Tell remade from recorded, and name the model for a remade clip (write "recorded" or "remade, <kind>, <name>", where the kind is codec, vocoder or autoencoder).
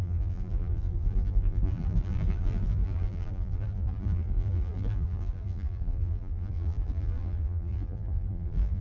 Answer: remade, vocoder, BigVGAN v2